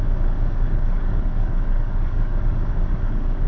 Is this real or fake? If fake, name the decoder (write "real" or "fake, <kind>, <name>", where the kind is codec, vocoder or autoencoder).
fake, codec, DAC